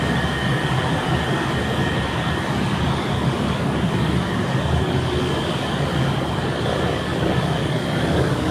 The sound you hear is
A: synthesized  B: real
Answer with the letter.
A